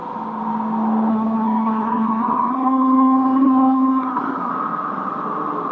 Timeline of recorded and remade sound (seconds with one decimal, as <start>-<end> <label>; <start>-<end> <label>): 0.0-1.1 recorded; 1.1-4.5 remade; 4.5-5.7 recorded